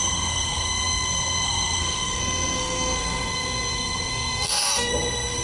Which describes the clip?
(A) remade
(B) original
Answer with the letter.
A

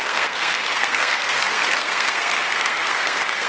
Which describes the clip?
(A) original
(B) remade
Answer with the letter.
B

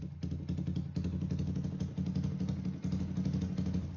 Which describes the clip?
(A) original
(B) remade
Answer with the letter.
A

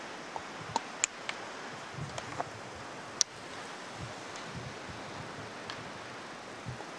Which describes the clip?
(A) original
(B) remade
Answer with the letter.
A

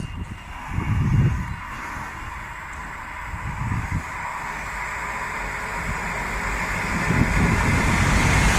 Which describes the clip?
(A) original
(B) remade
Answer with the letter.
A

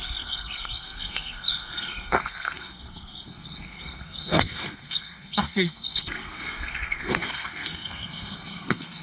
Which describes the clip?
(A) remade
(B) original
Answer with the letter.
A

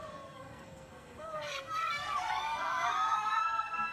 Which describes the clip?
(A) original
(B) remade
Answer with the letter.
B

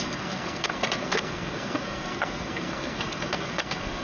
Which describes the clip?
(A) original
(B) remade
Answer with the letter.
B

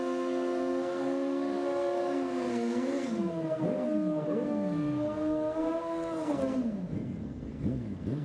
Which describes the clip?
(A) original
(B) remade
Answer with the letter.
B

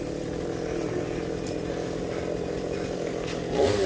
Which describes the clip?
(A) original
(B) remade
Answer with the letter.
A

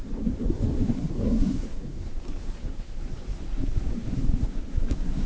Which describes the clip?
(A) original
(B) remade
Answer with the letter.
B